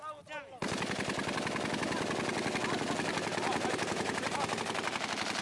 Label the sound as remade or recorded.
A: recorded